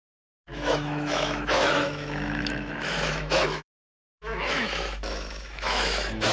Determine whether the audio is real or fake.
fake